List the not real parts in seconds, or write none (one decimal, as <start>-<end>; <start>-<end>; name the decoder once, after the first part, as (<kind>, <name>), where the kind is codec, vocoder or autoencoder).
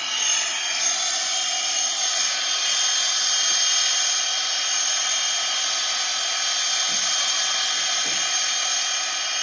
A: none